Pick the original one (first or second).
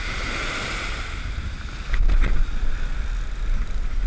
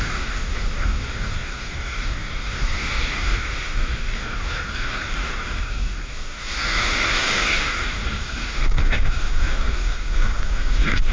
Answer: first